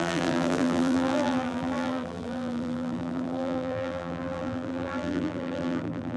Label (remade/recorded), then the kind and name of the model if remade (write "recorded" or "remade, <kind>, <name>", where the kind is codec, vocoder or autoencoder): remade, vocoder, BigVGAN v2